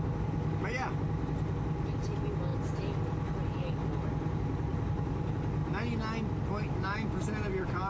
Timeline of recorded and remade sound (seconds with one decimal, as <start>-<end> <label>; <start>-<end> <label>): 0.0-7.9 recorded